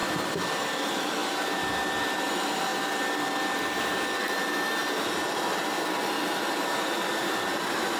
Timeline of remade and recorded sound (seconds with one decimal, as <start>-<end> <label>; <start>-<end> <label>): 0.0-0.7 recorded; 0.7-2.7 remade; 2.7-6.2 recorded; 6.2-8.0 remade